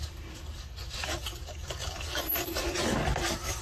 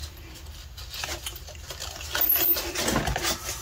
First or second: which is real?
second